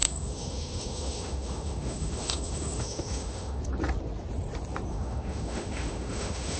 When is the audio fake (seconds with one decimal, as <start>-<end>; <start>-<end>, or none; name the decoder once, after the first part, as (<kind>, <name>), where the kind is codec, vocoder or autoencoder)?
0.0-3.6 (autoencoder, DAC-VAE); 4.9-6.6